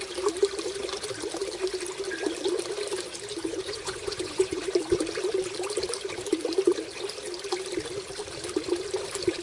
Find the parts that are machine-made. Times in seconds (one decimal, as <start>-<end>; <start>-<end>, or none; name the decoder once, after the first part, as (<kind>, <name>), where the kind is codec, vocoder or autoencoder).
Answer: 3.3-4.6 (vocoder, Vocos)